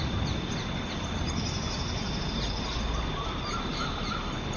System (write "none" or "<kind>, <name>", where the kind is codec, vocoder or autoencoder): none